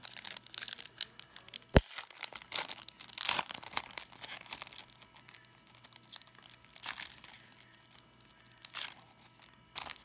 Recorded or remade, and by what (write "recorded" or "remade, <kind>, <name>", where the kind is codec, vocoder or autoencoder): recorded